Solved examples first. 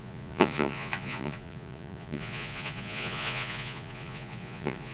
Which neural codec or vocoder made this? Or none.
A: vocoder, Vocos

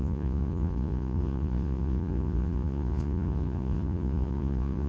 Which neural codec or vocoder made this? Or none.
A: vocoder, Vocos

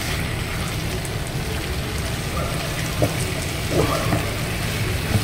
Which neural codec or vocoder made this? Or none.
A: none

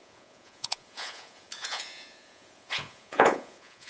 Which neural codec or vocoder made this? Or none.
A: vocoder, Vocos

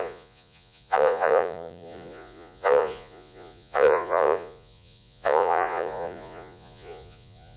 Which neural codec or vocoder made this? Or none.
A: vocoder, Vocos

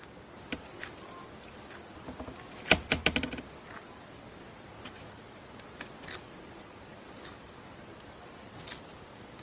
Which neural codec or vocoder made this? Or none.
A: none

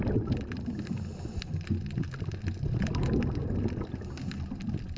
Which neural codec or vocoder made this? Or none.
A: none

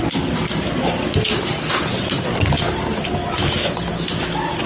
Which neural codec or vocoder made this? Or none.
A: none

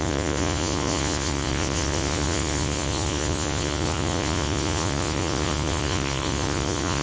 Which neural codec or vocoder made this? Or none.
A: vocoder, Vocos